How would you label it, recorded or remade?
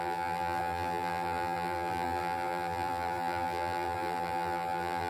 remade